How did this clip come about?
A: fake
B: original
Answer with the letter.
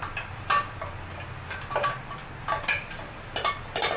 B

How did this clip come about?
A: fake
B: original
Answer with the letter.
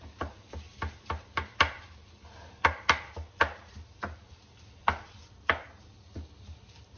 B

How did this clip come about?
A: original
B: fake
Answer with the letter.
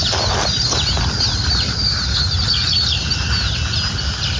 A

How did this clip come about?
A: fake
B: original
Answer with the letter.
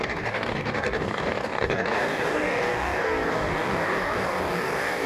A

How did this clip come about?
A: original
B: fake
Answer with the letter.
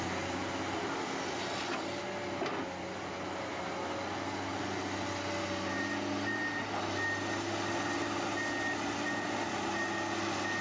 A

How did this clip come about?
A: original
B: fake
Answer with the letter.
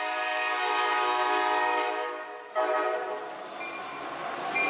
A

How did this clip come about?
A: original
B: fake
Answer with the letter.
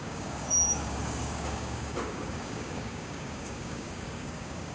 B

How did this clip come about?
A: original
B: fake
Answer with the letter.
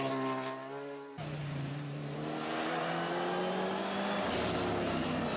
A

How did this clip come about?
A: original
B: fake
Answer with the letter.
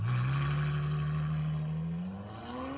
A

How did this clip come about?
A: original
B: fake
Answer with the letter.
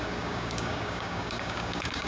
B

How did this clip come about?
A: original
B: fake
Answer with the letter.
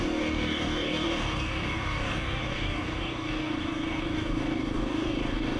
B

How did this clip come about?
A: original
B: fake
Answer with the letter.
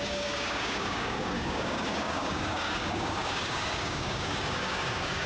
B